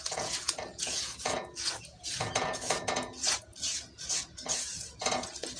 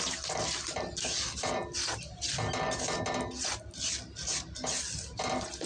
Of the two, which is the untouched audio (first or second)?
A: second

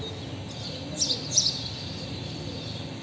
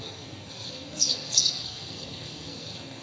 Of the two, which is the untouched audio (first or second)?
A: first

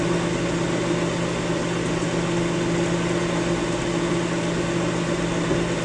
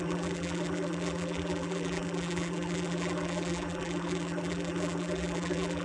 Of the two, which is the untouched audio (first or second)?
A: first